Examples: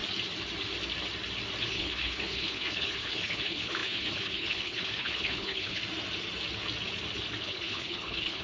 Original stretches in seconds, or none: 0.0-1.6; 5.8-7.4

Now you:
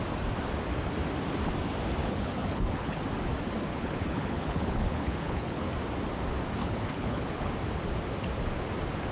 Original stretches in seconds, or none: 0.0-2.0; 3.0-3.7; 5.7-6.6; 7.5-9.1